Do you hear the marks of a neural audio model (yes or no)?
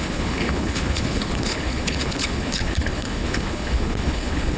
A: yes